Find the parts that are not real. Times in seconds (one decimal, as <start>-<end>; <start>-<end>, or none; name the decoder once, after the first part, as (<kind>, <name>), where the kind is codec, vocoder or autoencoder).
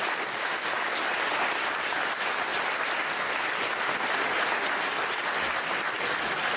none